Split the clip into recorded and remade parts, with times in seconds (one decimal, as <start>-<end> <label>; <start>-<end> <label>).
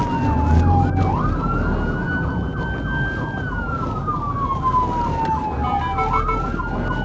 0.0-7.0 recorded